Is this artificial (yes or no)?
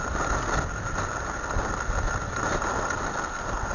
no